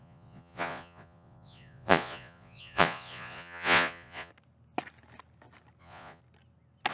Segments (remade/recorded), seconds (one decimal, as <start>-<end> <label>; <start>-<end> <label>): 0.0-4.3 remade; 4.3-5.8 recorded; 5.8-6.2 remade; 6.2-6.9 recorded